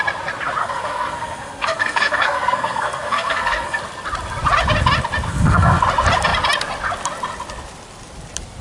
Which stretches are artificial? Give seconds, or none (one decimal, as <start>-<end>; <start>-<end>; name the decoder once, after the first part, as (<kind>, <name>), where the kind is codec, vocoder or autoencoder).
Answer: 0.6-3.8 (codec, SNAC); 5.3-5.8